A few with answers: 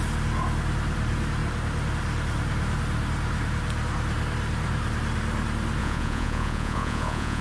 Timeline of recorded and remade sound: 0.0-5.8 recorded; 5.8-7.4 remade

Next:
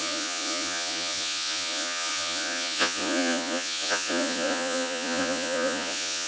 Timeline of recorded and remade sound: 0.0-6.3 remade

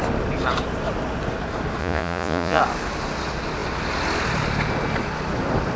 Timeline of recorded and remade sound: 0.0-1.8 recorded; 1.8-2.6 remade; 2.6-5.8 recorded

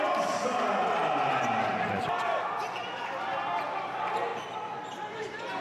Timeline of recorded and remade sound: 0.0-5.6 recorded

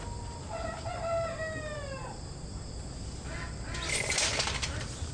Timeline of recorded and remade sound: 0.0-5.1 recorded

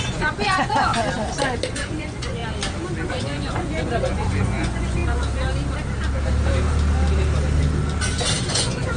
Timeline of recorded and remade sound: 0.0-0.9 remade; 0.9-1.7 recorded; 1.7-2.4 remade; 2.4-3.1 recorded; 3.1-5.0 remade; 5.0-8.4 recorded; 8.4-9.0 remade

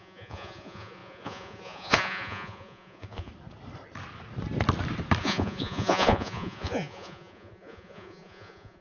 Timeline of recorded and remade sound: 0.0-3.3 remade; 3.3-5.2 recorded; 5.2-8.8 remade

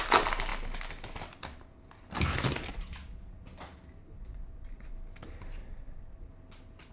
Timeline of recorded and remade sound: 0.0-2.7 recorded; 2.7-3.5 remade; 3.5-4.0 recorded; 4.0-4.9 remade; 4.9-5.6 recorded; 5.6-6.3 remade; 6.3-6.9 recorded